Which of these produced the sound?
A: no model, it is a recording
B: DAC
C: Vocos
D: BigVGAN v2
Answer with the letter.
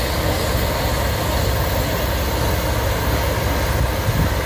A